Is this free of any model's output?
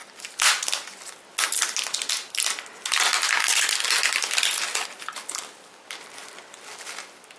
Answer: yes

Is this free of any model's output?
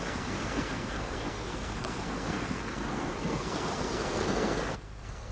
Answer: no